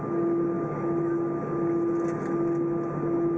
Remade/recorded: recorded